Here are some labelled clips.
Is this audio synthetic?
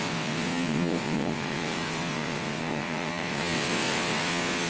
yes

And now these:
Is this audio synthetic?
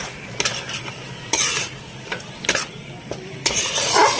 no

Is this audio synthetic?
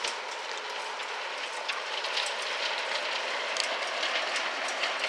no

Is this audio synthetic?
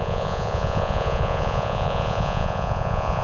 yes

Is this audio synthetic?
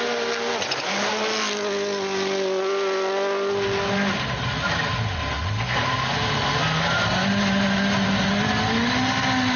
no